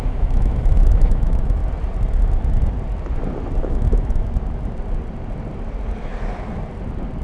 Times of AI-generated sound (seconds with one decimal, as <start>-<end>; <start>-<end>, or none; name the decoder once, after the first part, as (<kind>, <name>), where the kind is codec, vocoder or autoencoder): 0.0-1.6 (autoencoder, DAC-VAE); 3.6-4.2